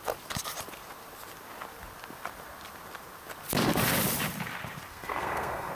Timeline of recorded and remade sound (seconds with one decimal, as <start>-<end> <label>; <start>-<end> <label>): 0.0-4.9 recorded; 4.9-5.7 remade